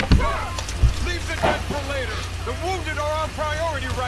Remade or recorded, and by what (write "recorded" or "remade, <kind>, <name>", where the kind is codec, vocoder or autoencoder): recorded